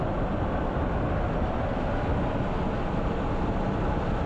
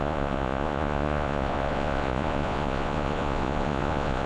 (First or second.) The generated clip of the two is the second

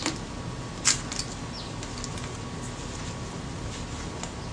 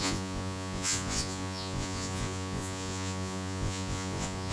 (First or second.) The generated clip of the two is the second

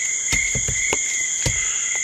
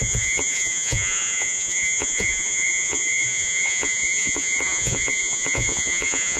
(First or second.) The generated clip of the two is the second